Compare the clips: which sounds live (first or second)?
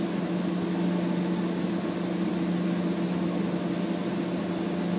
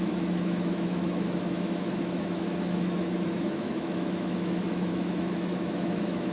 first